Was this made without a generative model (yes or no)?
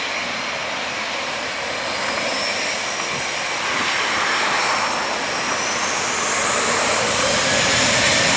yes